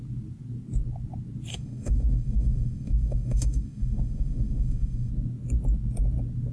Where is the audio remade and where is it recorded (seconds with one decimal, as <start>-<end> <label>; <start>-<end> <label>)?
0.0-1.5 recorded; 1.5-5.1 remade; 5.1-6.5 recorded